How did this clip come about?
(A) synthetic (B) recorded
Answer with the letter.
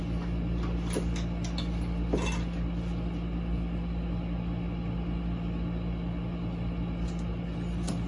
B